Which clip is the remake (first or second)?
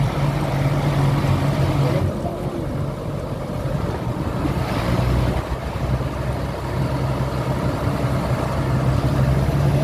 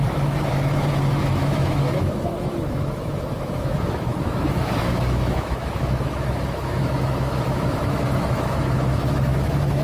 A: second